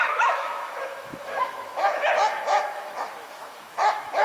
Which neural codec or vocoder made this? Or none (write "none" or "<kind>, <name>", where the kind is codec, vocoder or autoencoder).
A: autoencoder, DAC-VAE